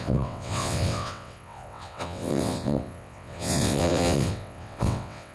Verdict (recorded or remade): remade